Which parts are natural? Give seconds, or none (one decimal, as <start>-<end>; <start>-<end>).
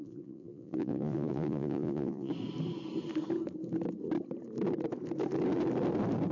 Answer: 2.3-6.3